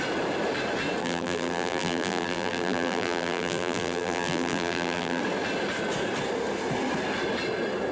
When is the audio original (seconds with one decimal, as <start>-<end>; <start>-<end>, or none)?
0.0-1.0; 5.2-7.9

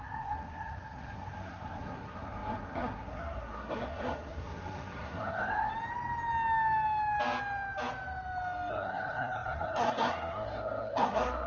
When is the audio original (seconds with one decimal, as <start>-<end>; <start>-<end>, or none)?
5.7-8.7

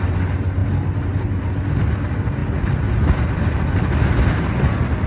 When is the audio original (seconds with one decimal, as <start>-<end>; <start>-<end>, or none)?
0.0-5.1